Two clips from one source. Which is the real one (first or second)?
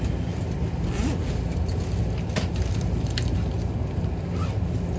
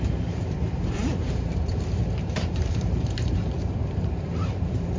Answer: first